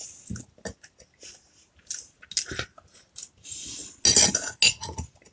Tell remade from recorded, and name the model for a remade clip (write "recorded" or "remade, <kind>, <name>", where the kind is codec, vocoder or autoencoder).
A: recorded